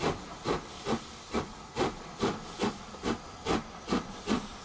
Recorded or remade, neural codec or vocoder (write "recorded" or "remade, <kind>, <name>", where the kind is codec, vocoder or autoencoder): remade, vocoder, BigVGAN v2